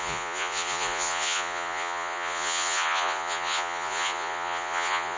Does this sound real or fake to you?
fake